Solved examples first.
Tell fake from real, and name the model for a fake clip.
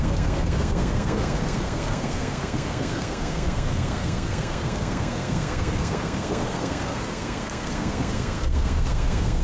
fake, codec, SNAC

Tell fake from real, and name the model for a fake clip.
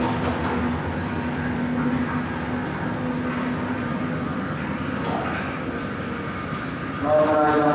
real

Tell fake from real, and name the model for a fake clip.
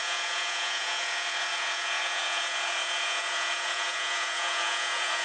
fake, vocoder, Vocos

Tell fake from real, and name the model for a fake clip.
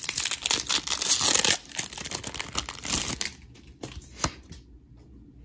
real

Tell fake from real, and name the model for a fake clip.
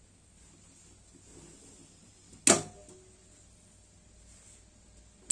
real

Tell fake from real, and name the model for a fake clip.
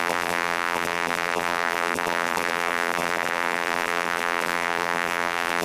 fake, vocoder, BigVGAN v2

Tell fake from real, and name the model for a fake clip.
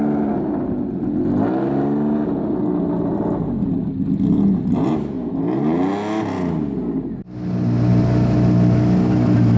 real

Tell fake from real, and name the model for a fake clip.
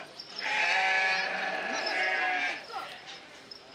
fake, vocoder, BigVGAN v2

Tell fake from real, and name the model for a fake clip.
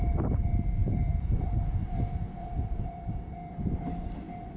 fake, vocoder, BigVGAN v2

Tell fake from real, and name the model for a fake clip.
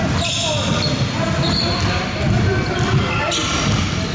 real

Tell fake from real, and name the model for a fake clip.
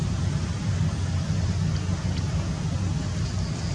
real